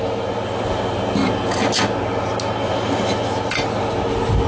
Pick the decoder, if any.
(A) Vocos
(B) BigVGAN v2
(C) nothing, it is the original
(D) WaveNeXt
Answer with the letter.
C